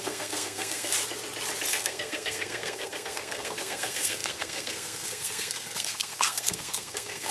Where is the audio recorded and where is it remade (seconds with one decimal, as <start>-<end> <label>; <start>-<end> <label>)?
0.0-0.9 remade; 0.9-1.7 recorded; 1.7-7.3 remade